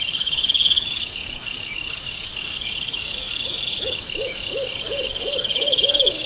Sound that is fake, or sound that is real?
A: fake